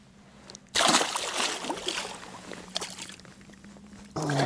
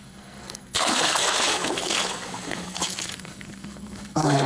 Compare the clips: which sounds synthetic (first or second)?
second